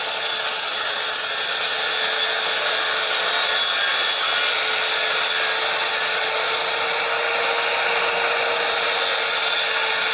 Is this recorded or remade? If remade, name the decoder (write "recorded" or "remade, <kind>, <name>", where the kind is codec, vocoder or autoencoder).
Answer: recorded